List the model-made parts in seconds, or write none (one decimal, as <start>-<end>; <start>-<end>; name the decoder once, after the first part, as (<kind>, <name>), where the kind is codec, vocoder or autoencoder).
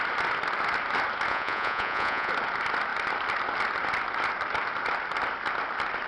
1.3-2.3 (vocoder, Vocos)